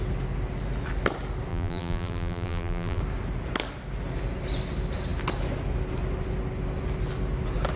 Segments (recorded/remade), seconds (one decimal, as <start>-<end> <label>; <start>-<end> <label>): 0.0-1.5 recorded; 1.5-3.0 remade; 3.0-7.8 recorded